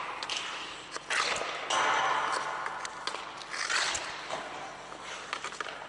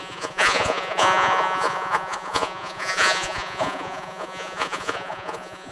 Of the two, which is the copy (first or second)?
second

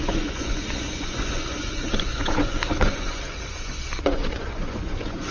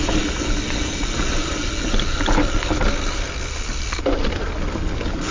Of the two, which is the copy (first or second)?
first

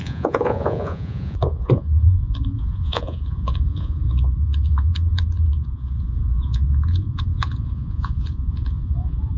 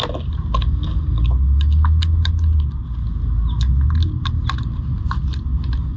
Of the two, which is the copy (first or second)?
first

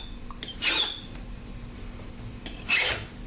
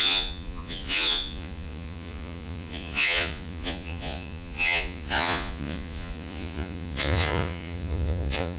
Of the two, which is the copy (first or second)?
second